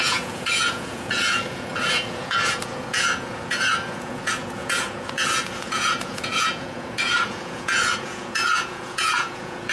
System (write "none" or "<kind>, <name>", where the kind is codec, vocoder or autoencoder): vocoder, Vocos